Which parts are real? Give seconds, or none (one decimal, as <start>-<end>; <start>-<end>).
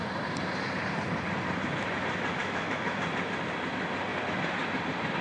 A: 0.0-2.4; 3.0-5.2